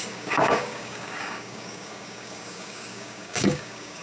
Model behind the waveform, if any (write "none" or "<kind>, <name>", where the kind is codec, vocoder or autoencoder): codec, DAC